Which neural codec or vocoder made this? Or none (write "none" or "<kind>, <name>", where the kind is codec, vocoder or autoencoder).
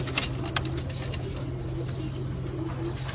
none